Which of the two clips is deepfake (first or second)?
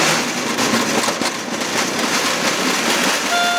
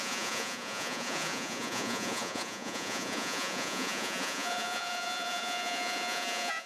second